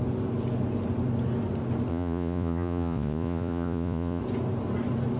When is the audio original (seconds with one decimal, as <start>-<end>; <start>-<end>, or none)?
0.0-1.9; 4.2-5.2